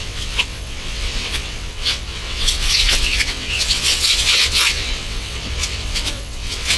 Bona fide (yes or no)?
no